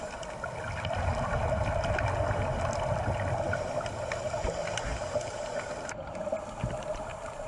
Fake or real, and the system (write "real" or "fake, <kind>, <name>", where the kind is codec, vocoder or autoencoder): real